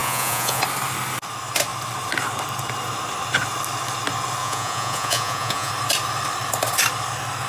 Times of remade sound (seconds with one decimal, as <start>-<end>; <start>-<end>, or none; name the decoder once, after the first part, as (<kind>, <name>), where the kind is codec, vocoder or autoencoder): 0.0-0.6 (vocoder, Vocos); 4.4-5.7